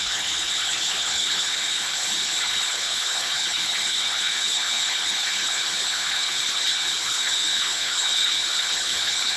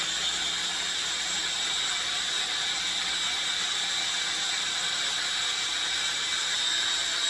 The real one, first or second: second